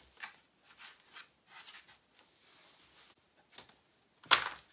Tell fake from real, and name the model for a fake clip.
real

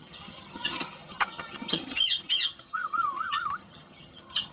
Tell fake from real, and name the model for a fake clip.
fake, vocoder, HiFi-GAN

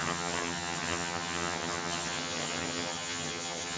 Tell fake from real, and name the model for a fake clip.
fake, vocoder, HiFi-GAN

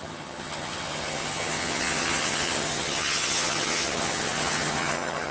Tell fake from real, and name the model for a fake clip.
fake, vocoder, HiFi-GAN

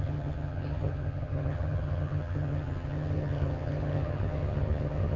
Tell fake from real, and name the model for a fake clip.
fake, vocoder, HiFi-GAN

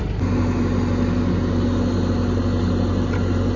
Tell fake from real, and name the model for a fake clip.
real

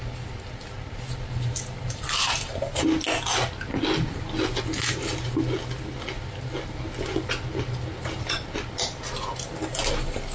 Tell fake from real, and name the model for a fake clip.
real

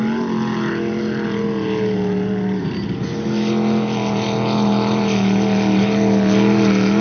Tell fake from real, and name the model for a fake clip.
real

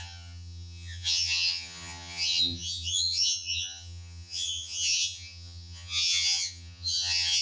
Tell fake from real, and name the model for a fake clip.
fake, vocoder, HiFi-GAN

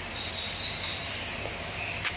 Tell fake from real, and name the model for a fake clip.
real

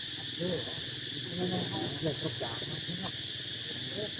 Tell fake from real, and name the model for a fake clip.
real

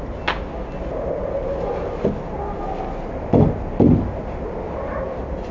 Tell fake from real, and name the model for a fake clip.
real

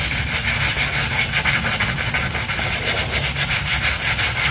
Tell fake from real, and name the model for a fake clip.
real